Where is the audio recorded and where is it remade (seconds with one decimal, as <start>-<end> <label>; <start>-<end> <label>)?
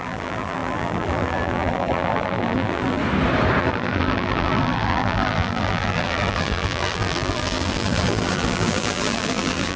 0.0-3.0 remade; 3.0-3.6 recorded; 3.6-9.8 remade